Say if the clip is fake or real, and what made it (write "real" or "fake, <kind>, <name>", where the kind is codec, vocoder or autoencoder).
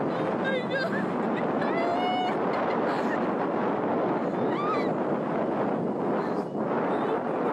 real